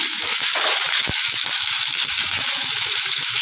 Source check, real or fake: fake